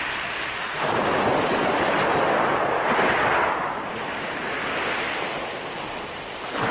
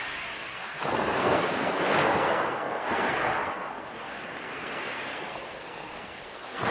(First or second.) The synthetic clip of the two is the second